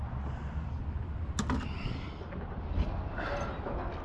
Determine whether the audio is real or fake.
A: real